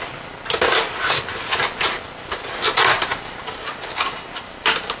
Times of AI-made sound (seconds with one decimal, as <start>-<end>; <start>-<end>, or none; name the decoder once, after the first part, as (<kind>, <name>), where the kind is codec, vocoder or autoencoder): none